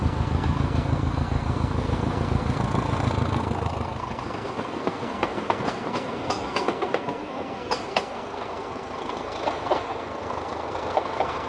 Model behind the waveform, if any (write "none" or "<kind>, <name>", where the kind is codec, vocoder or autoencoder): codec, SNAC